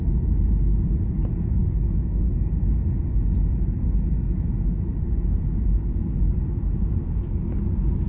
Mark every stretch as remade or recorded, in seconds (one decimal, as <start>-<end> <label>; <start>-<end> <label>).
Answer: 0.0-1.6 recorded; 1.6-2.5 remade; 2.5-8.1 recorded